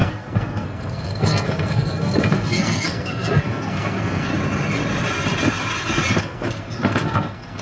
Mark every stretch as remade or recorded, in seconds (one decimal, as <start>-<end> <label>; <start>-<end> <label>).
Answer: 0.0-4.3 remade; 4.3-6.2 recorded; 6.2-7.6 remade